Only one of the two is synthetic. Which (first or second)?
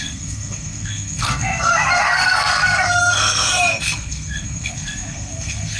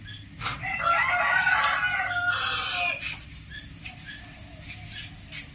first